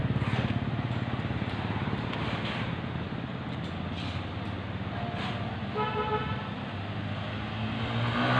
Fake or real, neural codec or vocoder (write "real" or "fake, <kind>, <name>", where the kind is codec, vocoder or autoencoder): real